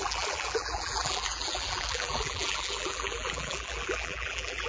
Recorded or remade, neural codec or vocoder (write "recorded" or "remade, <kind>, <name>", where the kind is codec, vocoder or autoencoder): remade, vocoder, BigVGAN v2